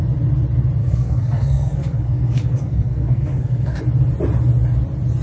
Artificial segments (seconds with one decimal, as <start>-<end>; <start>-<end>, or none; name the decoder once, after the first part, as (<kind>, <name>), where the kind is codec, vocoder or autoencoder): 0.8-3.8 (codec, SNAC)